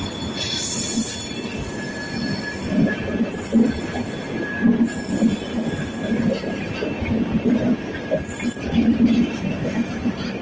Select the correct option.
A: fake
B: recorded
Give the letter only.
B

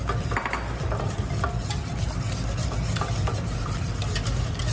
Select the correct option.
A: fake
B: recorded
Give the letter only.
B